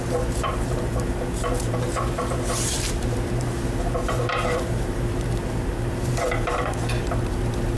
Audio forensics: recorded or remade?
remade